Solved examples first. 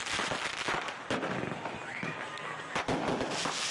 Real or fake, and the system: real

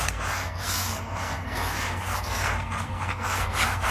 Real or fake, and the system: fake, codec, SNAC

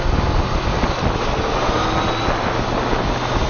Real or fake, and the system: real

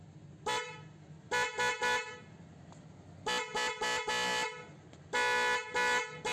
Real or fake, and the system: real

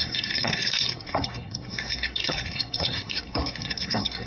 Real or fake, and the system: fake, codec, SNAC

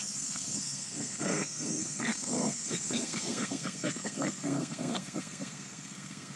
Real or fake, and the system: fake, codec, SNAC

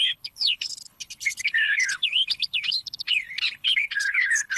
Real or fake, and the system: fake, codec, HILCodec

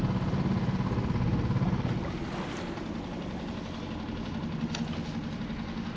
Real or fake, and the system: real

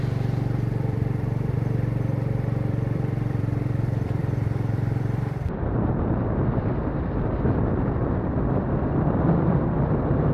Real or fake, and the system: fake, vocoder, BigVGAN v2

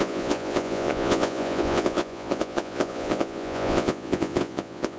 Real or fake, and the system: fake, vocoder, Vocos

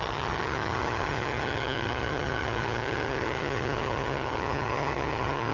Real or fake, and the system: fake, vocoder, HiFi-GAN